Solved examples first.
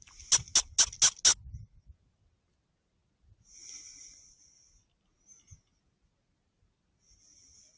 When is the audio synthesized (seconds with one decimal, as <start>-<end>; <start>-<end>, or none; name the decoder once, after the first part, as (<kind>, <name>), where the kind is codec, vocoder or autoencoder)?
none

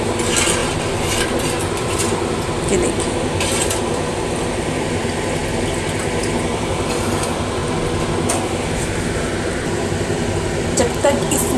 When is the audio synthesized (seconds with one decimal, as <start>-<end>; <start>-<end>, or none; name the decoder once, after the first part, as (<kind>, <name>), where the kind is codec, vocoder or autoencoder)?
0.0-5.4 (vocoder, BigVGAN v2); 6.3-7.6; 8.3-11.6

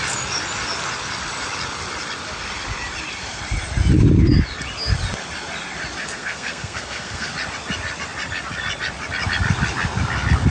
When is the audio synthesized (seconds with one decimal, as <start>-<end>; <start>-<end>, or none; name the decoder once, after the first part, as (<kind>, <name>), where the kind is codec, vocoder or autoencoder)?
6.0-7.3 (codec, SNAC)